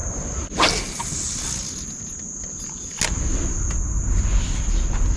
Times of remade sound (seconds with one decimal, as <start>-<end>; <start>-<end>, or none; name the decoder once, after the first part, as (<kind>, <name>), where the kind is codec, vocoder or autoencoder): none